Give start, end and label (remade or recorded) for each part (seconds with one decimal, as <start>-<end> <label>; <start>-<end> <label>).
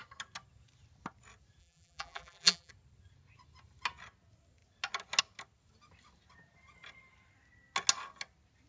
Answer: 0.0-1.6 recorded; 1.6-2.7 remade; 2.7-8.7 recorded